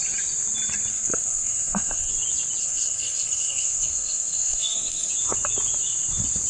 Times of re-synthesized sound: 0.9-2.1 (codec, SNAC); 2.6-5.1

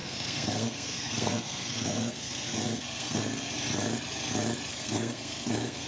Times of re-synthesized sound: 0.0-3.5 (codec, SNAC); 4.7-5.9

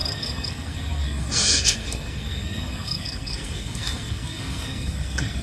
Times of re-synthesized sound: 0.0-5.4 (codec, SNAC)

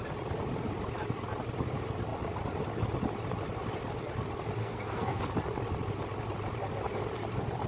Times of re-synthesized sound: 4.6-5.2 (codec, SNAC)